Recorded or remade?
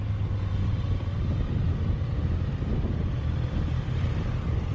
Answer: recorded